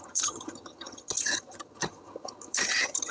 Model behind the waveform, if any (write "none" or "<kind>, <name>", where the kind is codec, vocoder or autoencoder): vocoder, HiFi-GAN